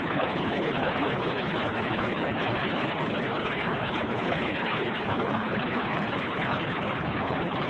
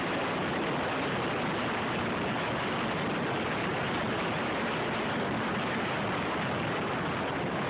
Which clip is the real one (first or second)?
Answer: second